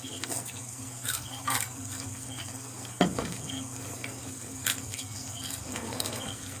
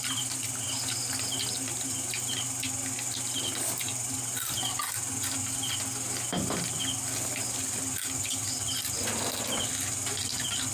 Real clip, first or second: second